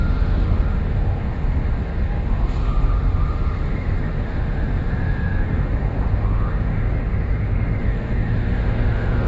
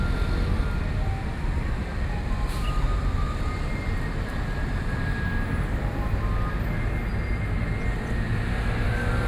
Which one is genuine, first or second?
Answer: second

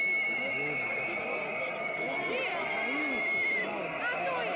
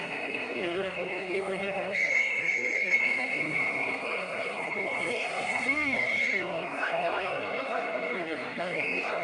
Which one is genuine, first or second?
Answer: first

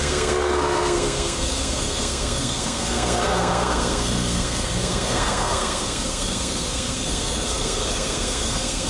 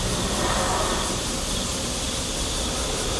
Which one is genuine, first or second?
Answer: second